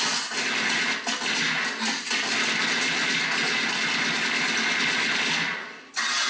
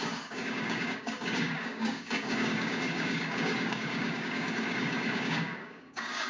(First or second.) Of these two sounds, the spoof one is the second